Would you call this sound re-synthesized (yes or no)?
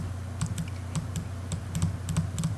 no